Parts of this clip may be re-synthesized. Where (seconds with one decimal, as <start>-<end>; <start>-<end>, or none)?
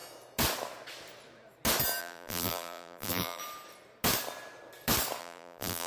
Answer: 2.0-3.4; 5.2-5.9